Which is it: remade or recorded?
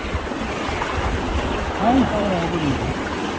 recorded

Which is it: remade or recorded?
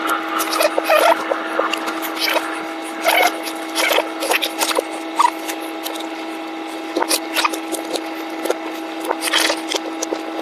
recorded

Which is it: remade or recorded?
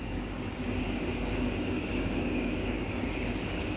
remade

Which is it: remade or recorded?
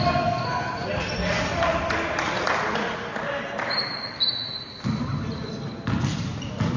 recorded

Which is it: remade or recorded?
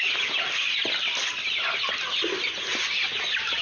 recorded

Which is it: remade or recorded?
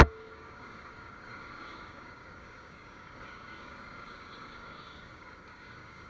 remade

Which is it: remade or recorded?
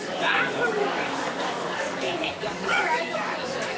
remade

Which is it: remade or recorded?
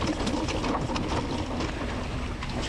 recorded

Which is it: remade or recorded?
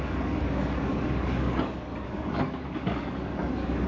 remade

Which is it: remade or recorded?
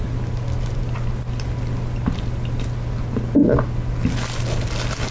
recorded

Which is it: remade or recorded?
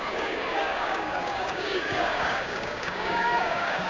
remade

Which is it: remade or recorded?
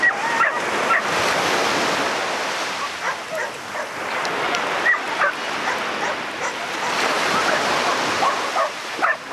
recorded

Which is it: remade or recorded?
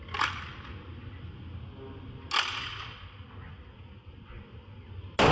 recorded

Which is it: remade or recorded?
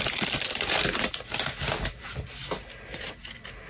recorded